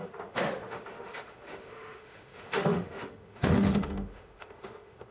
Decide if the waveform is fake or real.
fake